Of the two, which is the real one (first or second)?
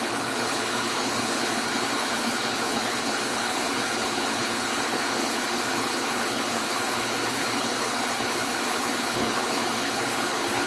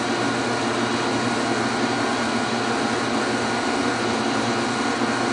second